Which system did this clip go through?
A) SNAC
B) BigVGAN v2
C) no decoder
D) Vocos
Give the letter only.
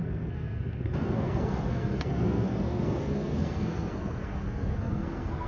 A